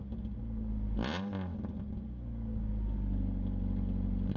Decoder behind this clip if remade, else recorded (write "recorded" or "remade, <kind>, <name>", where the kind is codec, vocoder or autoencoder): recorded